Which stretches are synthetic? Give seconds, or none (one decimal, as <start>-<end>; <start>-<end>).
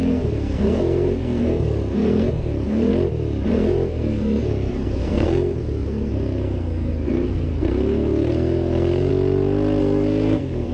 0.0-2.9; 3.5-9.1; 9.8-10.7